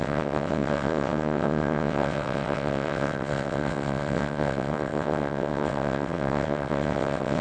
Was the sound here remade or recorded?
remade